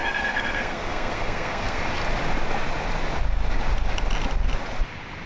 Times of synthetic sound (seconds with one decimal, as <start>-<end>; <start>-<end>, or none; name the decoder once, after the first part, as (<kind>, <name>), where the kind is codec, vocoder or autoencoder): 0.0-1.8 (codec, SNAC)